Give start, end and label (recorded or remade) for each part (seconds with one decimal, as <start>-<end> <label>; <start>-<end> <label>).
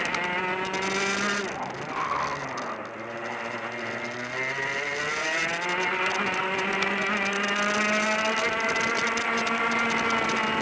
0.0-10.6 recorded